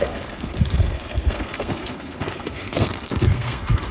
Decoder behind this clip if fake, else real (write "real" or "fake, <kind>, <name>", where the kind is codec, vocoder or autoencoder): fake, codec, SNAC